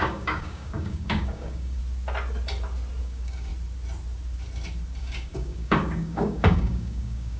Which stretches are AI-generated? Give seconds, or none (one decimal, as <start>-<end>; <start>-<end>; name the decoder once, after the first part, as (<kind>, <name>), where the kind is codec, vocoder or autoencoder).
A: 0.0-1.8 (codec, DAC); 3.0-3.5; 5.0-7.4